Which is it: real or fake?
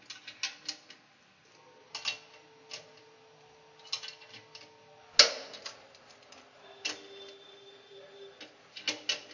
real